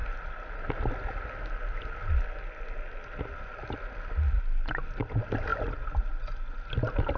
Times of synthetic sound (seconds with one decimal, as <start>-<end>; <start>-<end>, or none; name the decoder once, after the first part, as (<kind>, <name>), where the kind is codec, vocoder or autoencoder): none